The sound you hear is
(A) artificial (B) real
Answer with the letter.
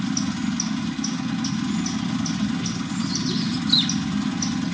B